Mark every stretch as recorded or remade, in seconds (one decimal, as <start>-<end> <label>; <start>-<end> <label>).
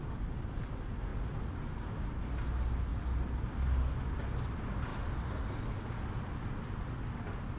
0.0-7.6 recorded